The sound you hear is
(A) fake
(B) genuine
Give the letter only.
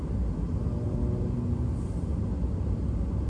B